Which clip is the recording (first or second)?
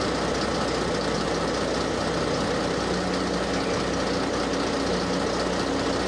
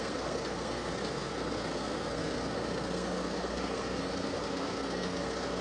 first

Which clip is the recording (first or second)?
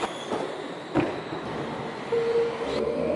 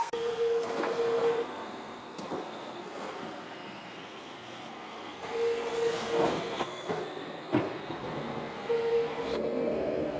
first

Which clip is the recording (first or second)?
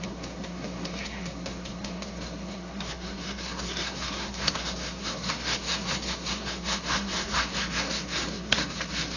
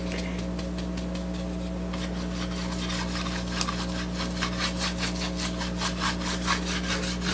second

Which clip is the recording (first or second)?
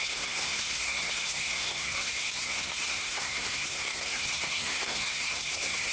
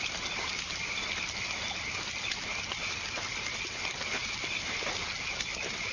second